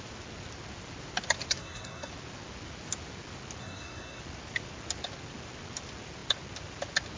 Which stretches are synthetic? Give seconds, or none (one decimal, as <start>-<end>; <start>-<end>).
1.6-2.1; 3.6-4.2